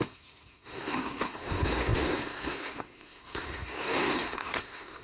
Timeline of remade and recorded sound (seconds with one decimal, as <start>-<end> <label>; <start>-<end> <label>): 0.0-5.0 remade